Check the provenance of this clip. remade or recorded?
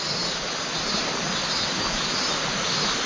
recorded